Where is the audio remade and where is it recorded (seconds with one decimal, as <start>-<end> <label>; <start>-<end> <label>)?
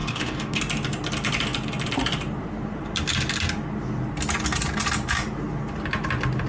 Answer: 0.0-0.6 remade; 0.6-6.5 recorded